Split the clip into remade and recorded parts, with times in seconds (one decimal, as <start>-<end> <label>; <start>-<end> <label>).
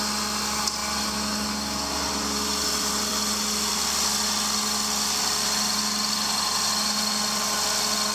0.0-8.1 recorded